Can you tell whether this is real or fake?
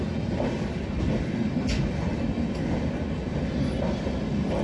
real